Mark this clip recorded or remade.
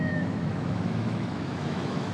remade